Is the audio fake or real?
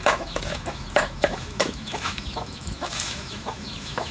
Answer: fake